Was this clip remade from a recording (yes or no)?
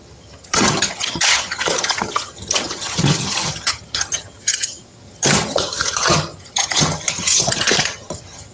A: yes